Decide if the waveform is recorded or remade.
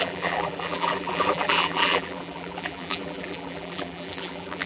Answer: remade